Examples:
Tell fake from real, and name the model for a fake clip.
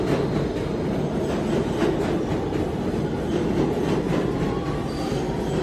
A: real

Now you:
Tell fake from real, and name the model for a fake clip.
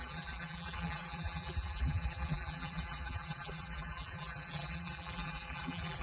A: fake, vocoder, BigVGAN v2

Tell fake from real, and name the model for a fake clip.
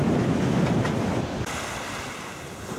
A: real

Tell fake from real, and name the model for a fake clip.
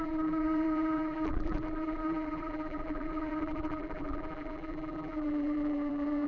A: fake, vocoder, BigVGAN v2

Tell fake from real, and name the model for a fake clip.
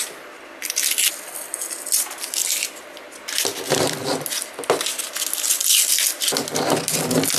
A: real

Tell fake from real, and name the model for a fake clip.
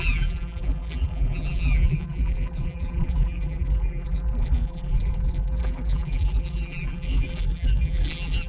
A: fake, vocoder, BigVGAN v2